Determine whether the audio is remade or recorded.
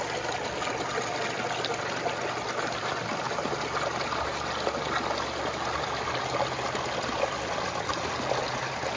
recorded